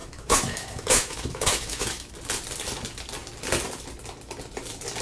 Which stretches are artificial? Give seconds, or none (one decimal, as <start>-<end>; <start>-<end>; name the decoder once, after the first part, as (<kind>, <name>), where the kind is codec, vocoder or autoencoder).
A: 0.0-2.1 (autoencoder, DAC-VAE)